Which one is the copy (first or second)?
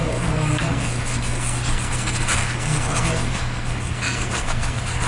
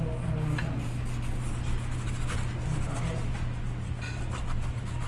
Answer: first